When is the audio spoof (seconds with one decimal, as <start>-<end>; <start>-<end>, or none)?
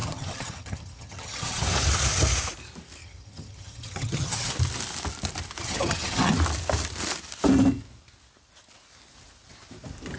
0.0-1.6; 3.0-4.5; 5.6-6.3